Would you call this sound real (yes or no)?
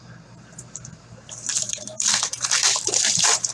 no